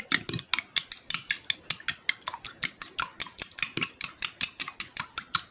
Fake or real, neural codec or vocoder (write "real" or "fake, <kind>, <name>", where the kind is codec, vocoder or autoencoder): real